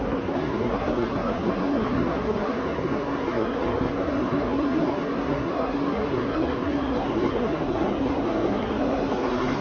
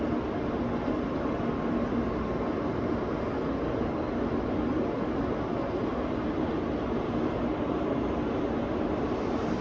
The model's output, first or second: first